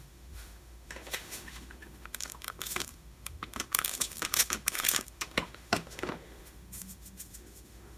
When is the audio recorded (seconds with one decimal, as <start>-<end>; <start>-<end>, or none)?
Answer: none